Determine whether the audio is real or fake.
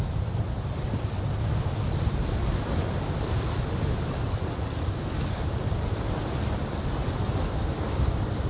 real